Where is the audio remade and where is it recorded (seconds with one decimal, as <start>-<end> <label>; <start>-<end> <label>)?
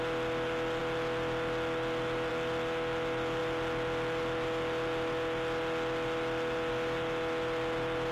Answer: 0.0-8.1 recorded